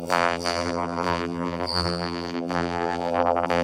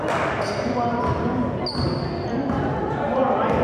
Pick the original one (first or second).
second